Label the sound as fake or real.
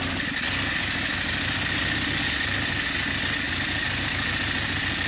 real